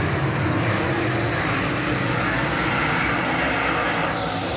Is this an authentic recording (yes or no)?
yes